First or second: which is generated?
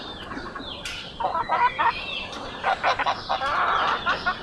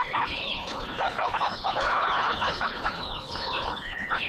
second